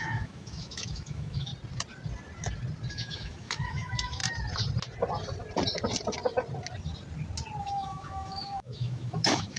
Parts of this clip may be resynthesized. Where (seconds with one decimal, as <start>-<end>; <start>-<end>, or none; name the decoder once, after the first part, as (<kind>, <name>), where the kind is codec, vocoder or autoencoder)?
0.0-1.5 (autoencoder, DAC-VAE); 2.9-4.2; 7.6-9.6